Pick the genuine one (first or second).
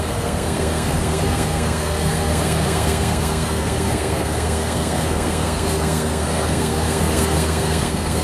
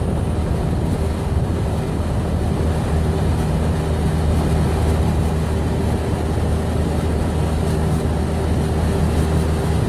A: second